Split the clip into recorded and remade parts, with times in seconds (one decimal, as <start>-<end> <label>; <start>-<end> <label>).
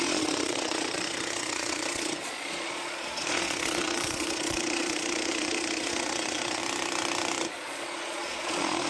0.0-6.6 remade; 6.6-7.5 recorded; 7.5-8.9 remade